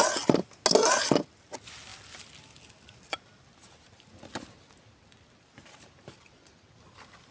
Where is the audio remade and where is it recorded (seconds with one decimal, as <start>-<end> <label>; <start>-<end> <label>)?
0.0-7.3 recorded